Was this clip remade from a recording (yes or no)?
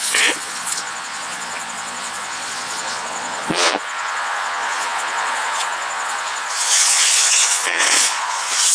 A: yes